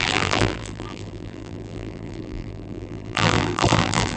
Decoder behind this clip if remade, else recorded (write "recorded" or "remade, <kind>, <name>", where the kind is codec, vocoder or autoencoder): remade, vocoder, BigVGAN v2